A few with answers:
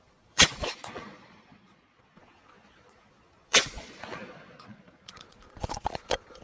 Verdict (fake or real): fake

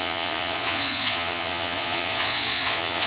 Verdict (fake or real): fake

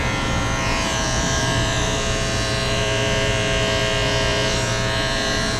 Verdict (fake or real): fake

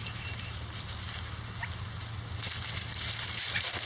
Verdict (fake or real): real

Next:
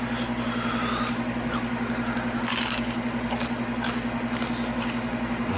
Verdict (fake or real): real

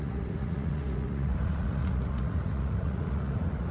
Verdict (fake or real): fake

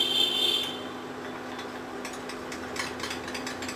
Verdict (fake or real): real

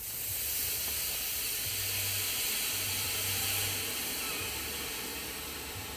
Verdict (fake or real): real